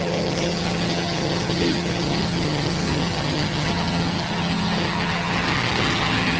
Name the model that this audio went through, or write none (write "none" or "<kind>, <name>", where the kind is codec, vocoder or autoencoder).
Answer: vocoder, HiFi-GAN